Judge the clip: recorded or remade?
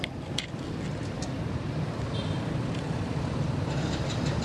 recorded